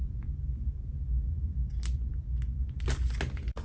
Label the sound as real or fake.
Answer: real